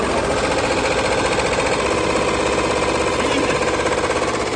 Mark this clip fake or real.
real